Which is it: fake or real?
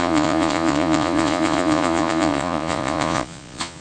fake